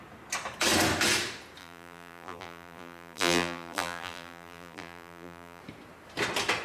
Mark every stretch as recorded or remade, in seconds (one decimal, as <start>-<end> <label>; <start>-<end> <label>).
0.0-1.6 recorded; 1.6-5.6 remade; 5.6-6.6 recorded